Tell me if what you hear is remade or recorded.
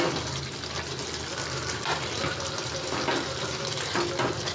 recorded